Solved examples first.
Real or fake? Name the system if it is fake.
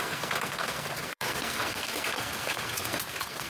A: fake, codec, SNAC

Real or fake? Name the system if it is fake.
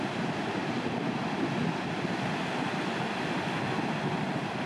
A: real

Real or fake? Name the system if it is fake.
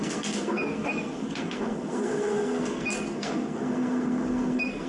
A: fake, codec, SNAC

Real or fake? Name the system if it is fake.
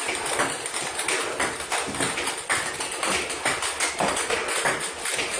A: real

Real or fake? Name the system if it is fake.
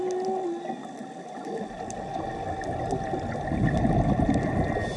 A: real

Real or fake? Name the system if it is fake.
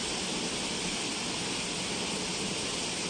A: real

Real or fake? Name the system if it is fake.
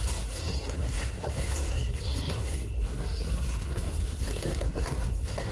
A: fake, codec, SNAC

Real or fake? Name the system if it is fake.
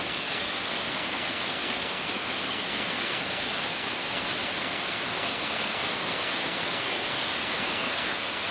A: fake, codec, SNAC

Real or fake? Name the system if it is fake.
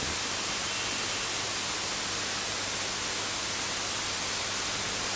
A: real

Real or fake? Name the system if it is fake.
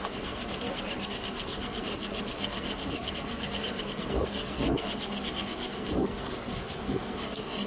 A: fake, codec, SNAC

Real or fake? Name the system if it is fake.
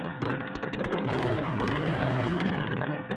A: fake, codec, SNAC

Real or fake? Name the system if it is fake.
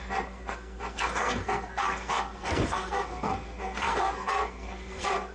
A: fake, codec, SNAC